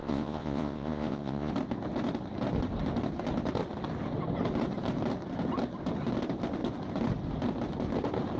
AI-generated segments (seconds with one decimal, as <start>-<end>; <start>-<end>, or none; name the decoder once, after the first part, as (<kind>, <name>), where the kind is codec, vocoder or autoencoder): 0.0-1.5 (vocoder, Vocos)